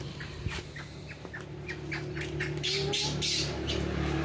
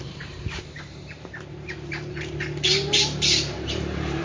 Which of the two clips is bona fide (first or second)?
first